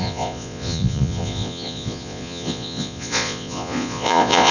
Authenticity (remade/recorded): remade